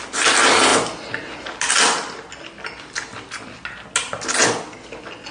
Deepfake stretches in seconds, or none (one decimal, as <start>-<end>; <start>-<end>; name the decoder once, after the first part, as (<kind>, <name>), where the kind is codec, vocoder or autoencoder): none